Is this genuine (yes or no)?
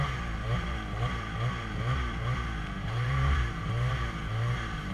no